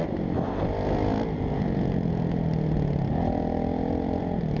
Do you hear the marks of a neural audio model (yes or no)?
no